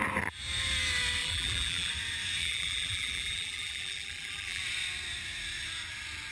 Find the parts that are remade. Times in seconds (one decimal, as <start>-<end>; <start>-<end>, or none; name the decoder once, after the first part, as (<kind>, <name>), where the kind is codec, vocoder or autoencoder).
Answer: 1.2-1.9 (vocoder, BigVGAN v2); 2.4-4.6

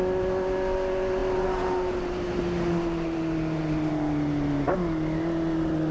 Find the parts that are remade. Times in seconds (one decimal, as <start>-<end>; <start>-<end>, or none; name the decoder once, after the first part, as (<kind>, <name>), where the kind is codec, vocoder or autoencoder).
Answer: none

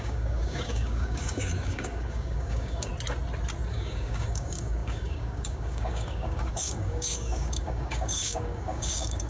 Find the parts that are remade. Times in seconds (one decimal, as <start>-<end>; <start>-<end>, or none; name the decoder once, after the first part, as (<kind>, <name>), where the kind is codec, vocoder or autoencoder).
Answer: 0.0-2.9 (codec, DAC); 3.7-9.3

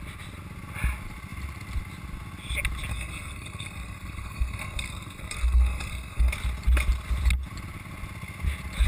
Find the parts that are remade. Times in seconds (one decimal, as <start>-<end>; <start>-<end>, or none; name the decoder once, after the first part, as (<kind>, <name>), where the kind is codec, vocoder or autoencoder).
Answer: 2.9-6.3 (codec, SNAC)

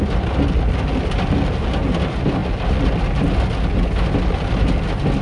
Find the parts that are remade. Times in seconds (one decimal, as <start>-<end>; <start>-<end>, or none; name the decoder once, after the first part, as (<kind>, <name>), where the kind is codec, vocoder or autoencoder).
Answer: none

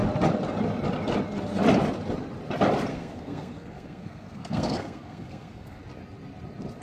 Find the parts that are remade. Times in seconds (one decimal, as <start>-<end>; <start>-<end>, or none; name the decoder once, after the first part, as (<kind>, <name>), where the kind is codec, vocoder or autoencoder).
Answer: 2.9-5.8 (codec, SNAC)